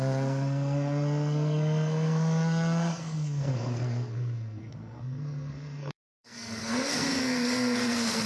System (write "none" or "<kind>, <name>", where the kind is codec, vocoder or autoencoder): codec, SNAC